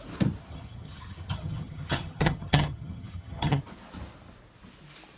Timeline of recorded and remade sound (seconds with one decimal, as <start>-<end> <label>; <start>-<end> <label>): 0.0-0.5 recorded; 0.5-3.6 remade; 3.6-5.2 recorded